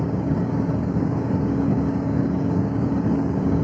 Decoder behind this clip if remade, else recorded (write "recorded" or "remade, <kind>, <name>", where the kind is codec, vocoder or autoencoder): remade, codec, DAC